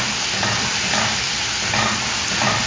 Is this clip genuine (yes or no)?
yes